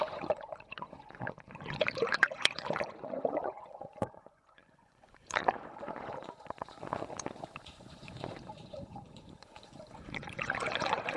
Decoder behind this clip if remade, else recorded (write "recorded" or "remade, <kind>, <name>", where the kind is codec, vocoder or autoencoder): remade, vocoder, Vocos